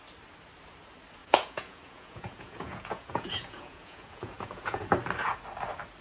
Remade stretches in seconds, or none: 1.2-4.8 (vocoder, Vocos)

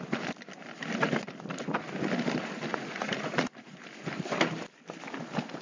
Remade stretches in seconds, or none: 2.7-3.7 (vocoder, Vocos)

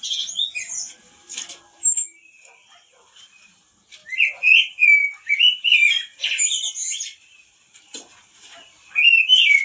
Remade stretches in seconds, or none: none

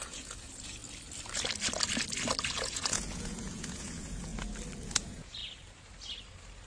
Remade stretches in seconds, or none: 0.0-0.8 (vocoder, Vocos); 2.6-4.3; 4.9-5.4

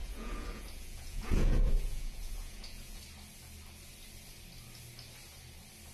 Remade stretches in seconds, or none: 0.0-3.0 (vocoder, Vocos)

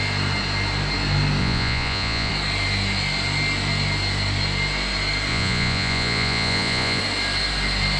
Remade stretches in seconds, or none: 1.4-2.3 (vocoder, Vocos); 5.3-7.0